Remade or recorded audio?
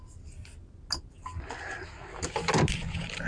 recorded